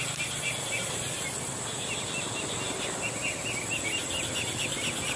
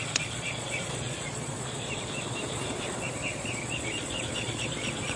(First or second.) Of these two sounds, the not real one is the second